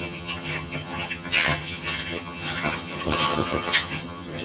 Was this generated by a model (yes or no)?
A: yes